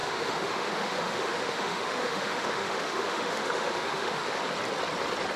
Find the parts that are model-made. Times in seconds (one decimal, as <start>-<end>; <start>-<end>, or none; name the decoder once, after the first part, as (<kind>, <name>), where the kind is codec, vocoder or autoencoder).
0.0-4.4 (autoencoder, DAC-VAE)